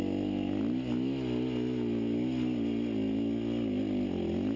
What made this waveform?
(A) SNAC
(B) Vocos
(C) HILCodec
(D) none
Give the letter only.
D